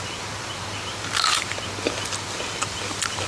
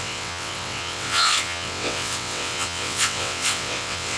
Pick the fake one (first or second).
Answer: second